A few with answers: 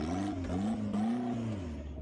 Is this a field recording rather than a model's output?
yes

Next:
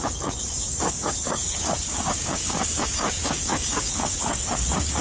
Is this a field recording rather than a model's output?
no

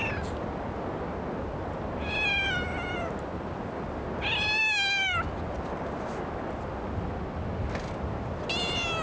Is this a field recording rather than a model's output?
yes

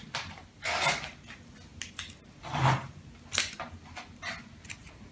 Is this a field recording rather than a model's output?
yes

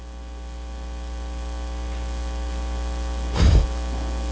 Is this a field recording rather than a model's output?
yes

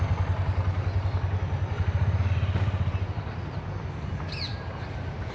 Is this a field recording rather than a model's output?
yes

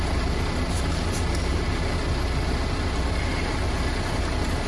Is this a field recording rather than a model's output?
yes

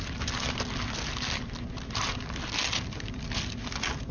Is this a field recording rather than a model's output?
yes